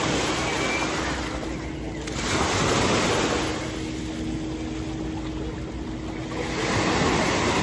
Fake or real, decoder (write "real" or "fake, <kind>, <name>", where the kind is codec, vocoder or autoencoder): real